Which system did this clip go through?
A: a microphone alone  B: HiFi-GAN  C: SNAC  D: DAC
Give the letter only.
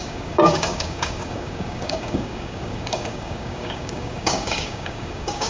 D